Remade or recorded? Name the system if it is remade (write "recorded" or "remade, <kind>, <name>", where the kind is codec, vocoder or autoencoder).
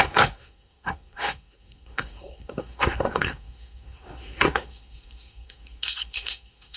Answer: remade, codec, SNAC